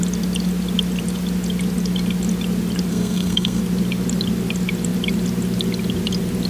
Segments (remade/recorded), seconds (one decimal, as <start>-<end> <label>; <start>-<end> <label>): 0.0-2.9 recorded; 2.9-3.6 remade; 3.6-6.5 recorded